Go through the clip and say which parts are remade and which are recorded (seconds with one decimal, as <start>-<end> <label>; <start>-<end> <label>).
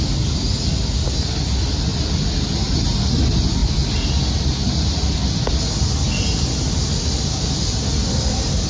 0.0-8.7 recorded